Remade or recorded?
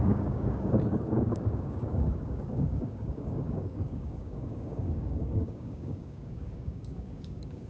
remade